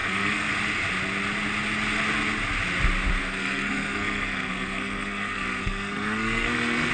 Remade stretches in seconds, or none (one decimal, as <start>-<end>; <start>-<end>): 0.0-0.5; 3.2-6.9